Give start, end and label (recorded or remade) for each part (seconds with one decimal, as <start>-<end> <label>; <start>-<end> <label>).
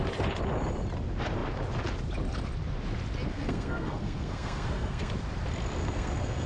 0.0-3.3 recorded; 3.3-5.1 remade; 5.1-5.8 recorded; 5.8-6.5 remade